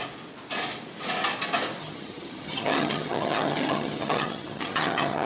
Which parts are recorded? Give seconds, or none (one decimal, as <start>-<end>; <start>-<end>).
0.0-1.8